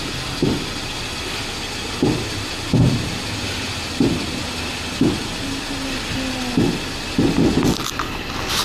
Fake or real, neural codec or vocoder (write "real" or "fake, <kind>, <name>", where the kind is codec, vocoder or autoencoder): real